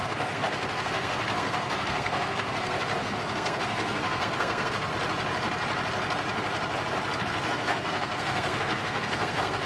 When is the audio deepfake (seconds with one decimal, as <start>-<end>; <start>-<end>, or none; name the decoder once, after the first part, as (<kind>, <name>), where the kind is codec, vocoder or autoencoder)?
0.0-4.9 (codec, SNAC); 7.2-9.7